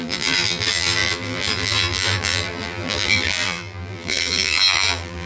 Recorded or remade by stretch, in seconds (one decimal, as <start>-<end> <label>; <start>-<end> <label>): 0.0-5.3 remade